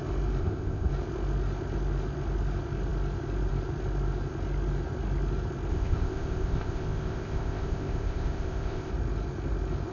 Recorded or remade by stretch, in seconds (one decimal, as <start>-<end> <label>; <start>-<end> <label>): 0.0-0.4 recorded; 0.4-0.9 remade; 0.9-5.7 recorded; 5.7-8.9 remade; 8.9-9.9 recorded

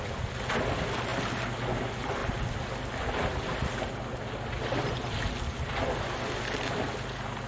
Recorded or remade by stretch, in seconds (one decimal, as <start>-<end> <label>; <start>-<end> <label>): 0.0-7.5 recorded

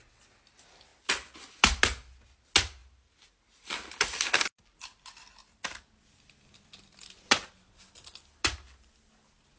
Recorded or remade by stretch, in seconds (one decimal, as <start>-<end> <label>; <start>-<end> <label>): 0.0-9.6 recorded

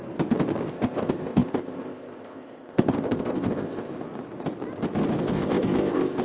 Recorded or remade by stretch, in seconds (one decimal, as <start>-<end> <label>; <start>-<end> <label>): 0.0-0.7 recorded; 0.7-3.9 remade; 3.9-5.2 recorded; 5.2-6.2 remade

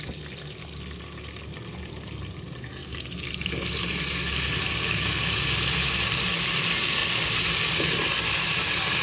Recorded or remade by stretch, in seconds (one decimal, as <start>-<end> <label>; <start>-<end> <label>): 0.0-9.0 recorded

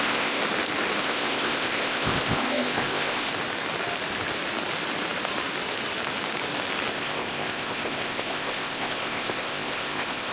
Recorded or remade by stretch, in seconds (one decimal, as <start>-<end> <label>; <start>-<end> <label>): 0.0-0.4 remade; 0.4-1.0 recorded; 1.0-3.3 remade; 3.3-6.9 recorded; 6.9-10.3 remade

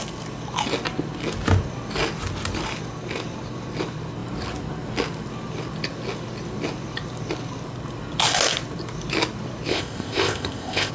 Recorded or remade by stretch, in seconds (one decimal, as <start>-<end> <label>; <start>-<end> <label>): 0.0-9.7 recorded; 9.7-10.9 remade